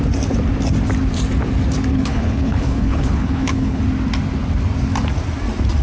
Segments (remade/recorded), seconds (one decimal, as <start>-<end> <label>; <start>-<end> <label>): 0.0-1.9 recorded; 1.9-3.8 remade; 3.8-5.8 recorded